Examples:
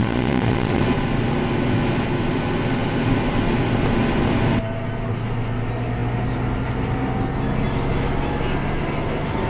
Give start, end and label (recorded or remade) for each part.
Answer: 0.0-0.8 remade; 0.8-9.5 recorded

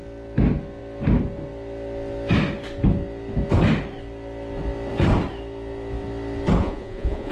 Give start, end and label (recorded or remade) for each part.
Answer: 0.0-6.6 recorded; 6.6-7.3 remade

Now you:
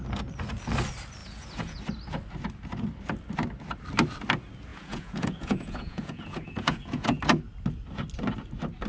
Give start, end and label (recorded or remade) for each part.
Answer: 0.0-1.2 recorded; 1.2-1.8 remade; 1.8-4.7 recorded; 4.7-7.2 remade; 7.2-8.9 recorded

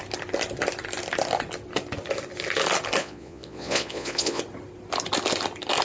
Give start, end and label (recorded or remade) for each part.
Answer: 0.0-3.0 recorded; 3.0-4.4 remade; 4.4-5.8 recorded